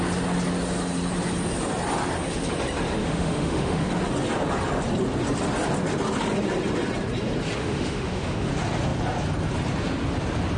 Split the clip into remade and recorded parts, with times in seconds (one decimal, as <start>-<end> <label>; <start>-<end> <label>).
0.0-3.0 recorded; 3.0-3.9 remade; 3.9-7.6 recorded; 7.6-8.5 remade; 8.5-10.6 recorded